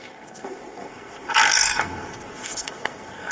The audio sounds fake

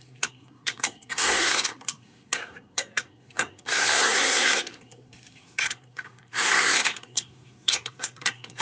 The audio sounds fake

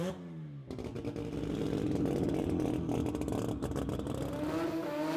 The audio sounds real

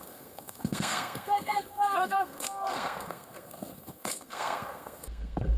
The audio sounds fake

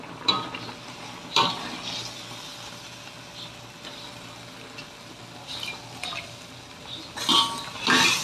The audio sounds real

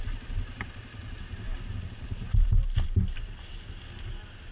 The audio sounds real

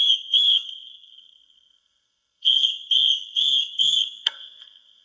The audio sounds fake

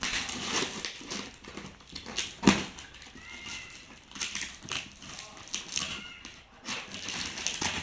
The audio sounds real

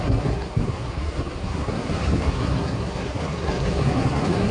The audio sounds fake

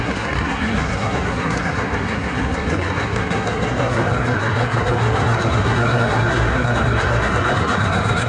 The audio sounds fake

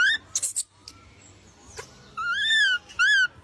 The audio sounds real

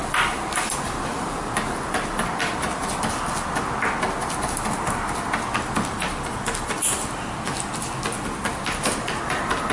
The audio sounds real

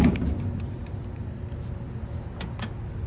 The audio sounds real